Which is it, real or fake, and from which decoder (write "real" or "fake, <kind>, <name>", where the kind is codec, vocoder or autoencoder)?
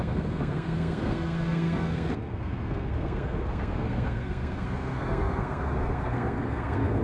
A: fake, codec, SNAC